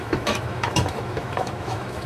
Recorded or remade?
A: remade